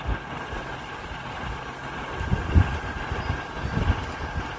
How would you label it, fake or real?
real